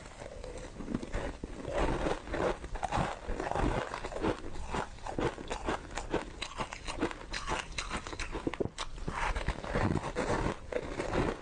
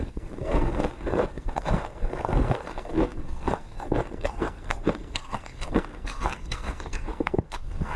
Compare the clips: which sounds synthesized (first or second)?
second